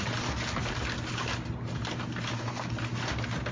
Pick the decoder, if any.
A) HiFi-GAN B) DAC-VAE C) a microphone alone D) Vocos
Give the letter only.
C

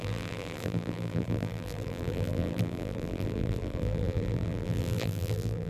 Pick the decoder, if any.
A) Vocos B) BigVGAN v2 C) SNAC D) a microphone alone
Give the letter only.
B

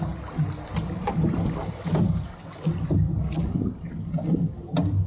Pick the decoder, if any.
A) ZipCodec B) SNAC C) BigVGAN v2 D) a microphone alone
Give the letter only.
D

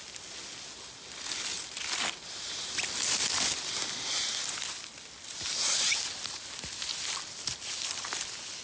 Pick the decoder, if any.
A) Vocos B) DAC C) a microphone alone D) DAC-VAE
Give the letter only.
C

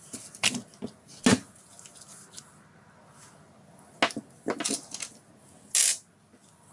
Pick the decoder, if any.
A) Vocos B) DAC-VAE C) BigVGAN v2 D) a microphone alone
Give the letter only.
D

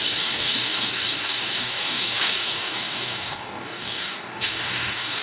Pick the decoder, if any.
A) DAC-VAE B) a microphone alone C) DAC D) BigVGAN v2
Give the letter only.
C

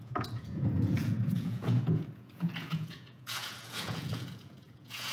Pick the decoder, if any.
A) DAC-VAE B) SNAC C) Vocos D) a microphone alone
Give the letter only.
C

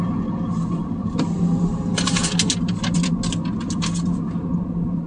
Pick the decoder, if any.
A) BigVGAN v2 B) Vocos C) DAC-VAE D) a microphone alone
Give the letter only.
D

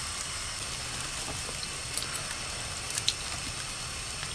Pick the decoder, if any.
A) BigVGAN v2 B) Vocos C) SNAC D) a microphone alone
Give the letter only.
D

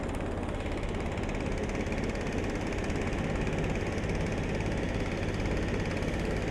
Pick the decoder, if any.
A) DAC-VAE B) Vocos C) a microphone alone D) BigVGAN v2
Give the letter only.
C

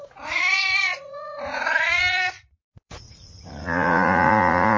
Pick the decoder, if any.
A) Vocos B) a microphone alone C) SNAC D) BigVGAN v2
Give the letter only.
A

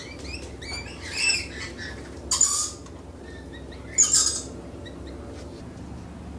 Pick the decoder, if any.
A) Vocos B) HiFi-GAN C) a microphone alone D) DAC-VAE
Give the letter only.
C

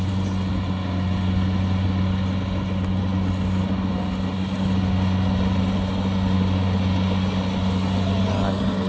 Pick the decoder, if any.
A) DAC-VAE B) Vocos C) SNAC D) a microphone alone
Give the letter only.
D